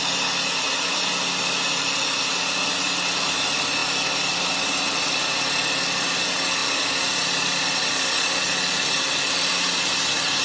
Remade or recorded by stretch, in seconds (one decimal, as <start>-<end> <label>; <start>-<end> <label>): 0.0-10.4 recorded